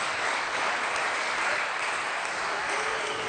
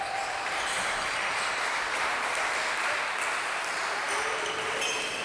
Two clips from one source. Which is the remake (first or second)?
first